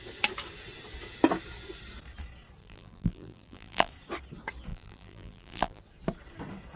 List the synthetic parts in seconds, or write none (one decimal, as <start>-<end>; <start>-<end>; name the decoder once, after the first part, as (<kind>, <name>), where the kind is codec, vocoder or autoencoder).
2.6-3.9 (vocoder, BigVGAN v2); 4.7-5.8

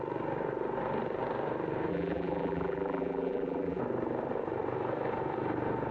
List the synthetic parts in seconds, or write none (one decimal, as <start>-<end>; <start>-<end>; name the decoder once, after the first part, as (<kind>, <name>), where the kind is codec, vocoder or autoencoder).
1.9-3.8 (vocoder, BigVGAN v2)

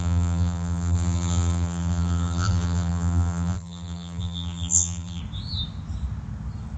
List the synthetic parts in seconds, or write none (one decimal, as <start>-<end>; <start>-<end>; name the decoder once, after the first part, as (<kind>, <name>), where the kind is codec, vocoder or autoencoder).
0.0-5.2 (vocoder, BigVGAN v2)

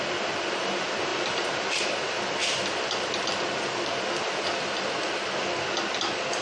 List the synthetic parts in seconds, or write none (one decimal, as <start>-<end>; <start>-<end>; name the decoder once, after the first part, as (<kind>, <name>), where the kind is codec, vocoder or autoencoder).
1.1-1.8 (vocoder, BigVGAN v2)